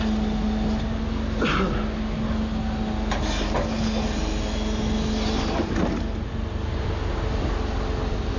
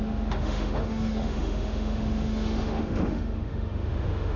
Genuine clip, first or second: first